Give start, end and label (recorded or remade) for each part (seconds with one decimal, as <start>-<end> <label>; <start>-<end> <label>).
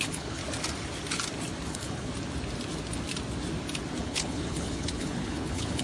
0.0-0.4 remade; 0.4-1.7 recorded; 1.7-2.1 remade; 2.1-4.0 recorded; 4.0-5.8 remade